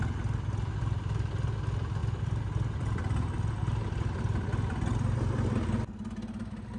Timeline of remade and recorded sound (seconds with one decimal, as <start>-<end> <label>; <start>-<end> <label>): 0.0-6.8 recorded